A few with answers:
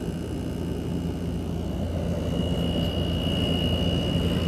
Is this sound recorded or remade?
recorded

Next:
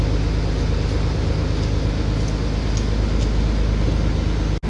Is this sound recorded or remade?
recorded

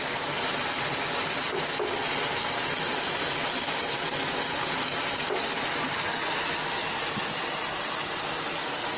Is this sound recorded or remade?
recorded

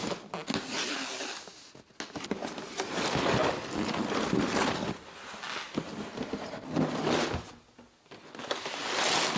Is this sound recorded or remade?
recorded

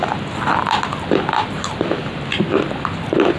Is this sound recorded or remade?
remade